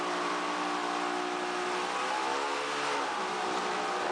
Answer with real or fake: real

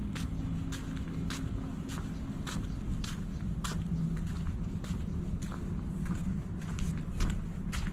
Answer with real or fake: real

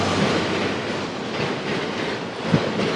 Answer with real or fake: real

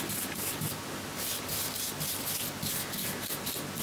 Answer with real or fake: real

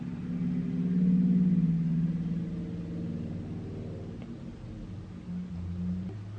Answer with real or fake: real